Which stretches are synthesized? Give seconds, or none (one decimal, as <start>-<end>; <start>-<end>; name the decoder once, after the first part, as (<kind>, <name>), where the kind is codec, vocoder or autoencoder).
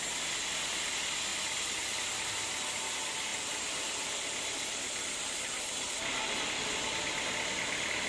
1.3-2.1 (vocoder, BigVGAN v2); 3.3-6.5